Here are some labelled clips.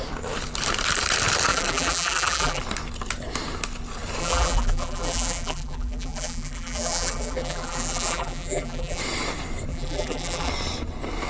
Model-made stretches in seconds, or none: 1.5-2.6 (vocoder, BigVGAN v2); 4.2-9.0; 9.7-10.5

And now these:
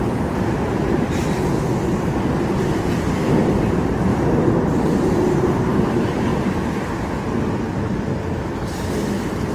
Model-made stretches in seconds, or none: 4.1-4.8 (vocoder, BigVGAN v2)

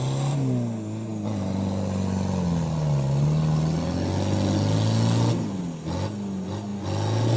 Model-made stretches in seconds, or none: none